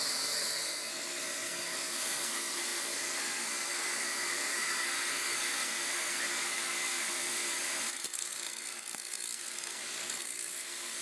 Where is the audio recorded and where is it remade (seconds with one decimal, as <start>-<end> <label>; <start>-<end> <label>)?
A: 0.0-11.0 remade